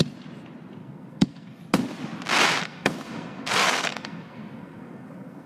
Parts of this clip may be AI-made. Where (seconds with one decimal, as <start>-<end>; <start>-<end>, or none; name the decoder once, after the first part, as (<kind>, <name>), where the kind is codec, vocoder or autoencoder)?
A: 0.8-1.6 (codec, SNAC); 2.6-5.5